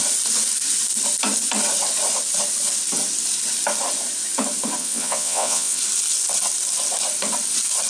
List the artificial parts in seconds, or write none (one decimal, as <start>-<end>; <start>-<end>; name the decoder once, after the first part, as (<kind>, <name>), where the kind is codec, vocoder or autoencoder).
4.8-5.8 (vocoder, WaveNeXt)